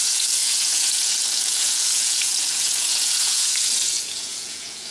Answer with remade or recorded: remade